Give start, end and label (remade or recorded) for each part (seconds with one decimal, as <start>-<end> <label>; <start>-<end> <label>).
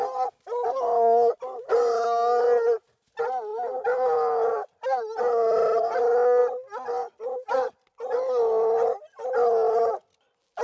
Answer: 0.0-10.6 recorded